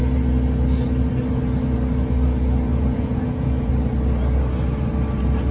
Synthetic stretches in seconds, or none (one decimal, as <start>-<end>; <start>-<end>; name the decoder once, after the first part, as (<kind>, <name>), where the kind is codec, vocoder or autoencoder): 2.7-3.7 (vocoder, Vocos)